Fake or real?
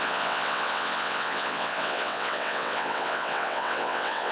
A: fake